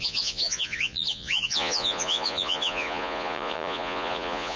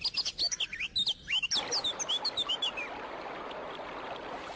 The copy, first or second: first